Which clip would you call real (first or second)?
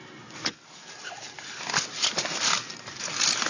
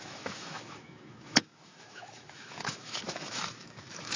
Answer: first